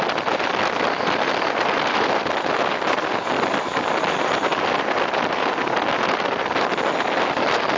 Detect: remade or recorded recorded